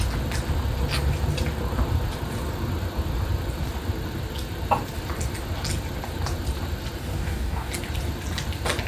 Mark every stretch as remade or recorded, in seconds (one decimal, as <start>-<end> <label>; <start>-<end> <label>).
0.0-7.0 recorded; 7.0-7.7 remade; 7.7-8.9 recorded